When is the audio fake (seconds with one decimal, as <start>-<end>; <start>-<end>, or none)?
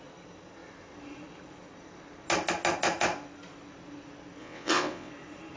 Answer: 4.4-5.1